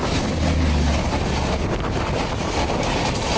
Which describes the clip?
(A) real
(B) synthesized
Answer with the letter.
A